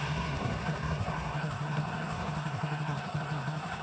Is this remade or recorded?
remade